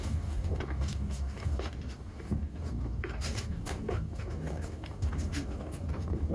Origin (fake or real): fake